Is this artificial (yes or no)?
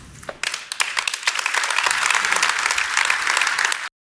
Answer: no